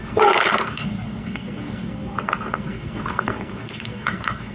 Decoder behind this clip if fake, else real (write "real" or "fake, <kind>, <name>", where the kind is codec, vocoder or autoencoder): fake, codec, SNAC